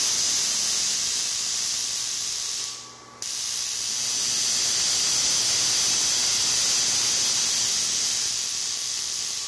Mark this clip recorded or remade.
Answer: recorded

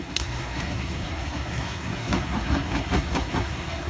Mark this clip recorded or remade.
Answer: remade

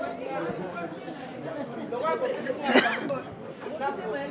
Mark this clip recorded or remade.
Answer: recorded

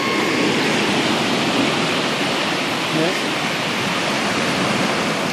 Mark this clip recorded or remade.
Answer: recorded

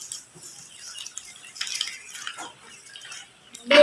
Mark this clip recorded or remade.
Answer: recorded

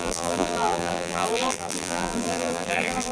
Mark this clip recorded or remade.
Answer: remade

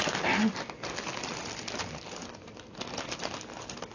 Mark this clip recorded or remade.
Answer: recorded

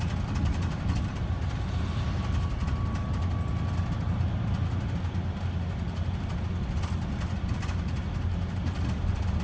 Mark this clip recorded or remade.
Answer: recorded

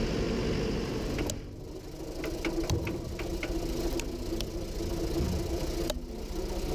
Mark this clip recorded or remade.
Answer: recorded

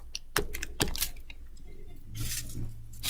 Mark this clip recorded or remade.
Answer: recorded